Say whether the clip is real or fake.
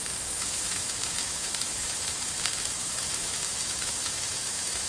fake